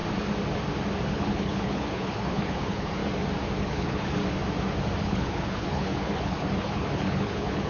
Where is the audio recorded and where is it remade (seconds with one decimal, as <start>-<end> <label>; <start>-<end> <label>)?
0.0-1.1 recorded; 1.1-3.0 remade; 3.0-3.6 recorded; 3.6-4.2 remade; 4.2-5.0 recorded; 5.0-7.7 remade